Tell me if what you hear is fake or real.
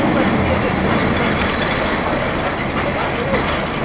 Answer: real